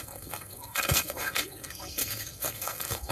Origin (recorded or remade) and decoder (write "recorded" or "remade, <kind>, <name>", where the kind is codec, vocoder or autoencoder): remade, codec, SNAC